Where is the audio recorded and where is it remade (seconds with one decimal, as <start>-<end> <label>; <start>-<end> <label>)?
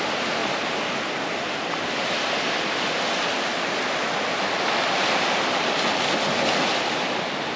0.0-7.6 recorded